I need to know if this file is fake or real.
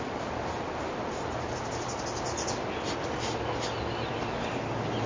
real